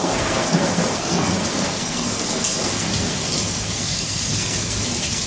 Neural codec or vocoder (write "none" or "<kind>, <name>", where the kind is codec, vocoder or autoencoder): codec, SNAC